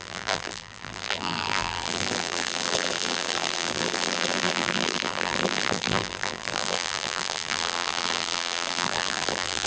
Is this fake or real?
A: fake